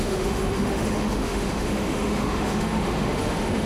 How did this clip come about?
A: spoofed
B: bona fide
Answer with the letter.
A